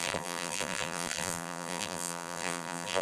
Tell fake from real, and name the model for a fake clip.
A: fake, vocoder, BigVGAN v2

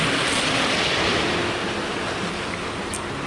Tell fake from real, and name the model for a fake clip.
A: real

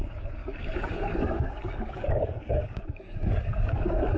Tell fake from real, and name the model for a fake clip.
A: fake, codec, DAC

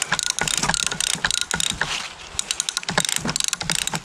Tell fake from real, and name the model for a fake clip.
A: real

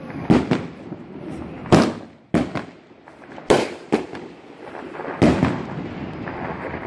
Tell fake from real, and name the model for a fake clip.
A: real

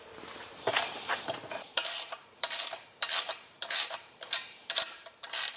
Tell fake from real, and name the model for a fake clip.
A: fake, vocoder, BigVGAN v2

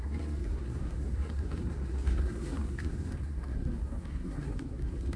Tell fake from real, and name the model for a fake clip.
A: fake, codec, SNAC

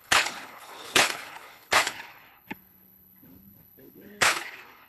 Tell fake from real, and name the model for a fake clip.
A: fake, codec, HILCodec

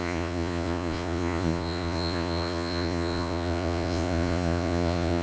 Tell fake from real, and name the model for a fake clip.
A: fake, vocoder, Vocos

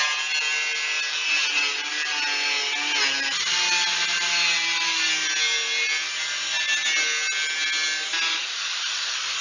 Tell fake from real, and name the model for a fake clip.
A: real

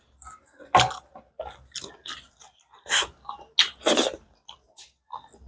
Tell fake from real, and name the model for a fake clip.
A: real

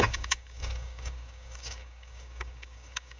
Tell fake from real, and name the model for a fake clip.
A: fake, codec, DAC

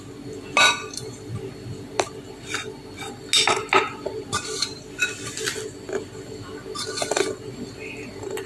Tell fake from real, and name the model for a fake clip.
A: real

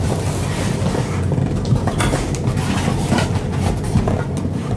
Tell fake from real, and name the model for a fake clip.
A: real